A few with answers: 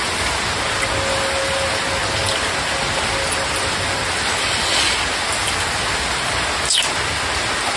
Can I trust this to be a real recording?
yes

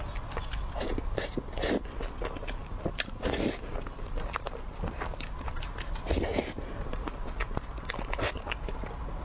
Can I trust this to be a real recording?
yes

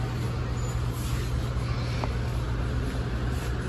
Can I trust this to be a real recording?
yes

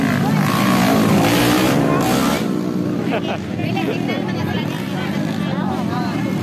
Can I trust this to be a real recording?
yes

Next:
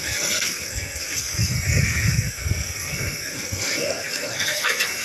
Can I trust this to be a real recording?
no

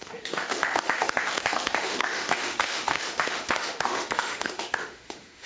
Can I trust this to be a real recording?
no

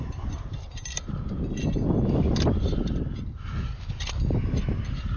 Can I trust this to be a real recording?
yes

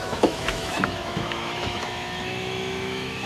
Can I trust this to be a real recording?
no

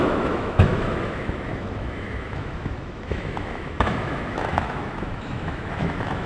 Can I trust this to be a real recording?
no